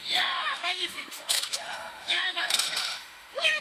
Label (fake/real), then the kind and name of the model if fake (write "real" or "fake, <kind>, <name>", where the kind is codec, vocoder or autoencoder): fake, autoencoder, DAC-VAE